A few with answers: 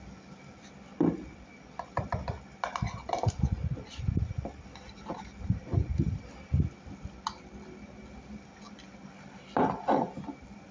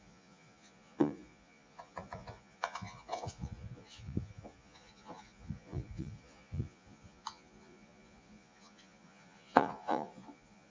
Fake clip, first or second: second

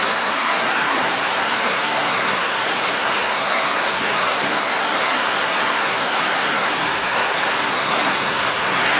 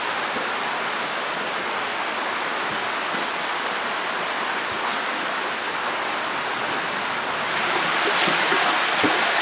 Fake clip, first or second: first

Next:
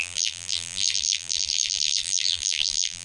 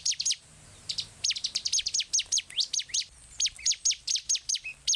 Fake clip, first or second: first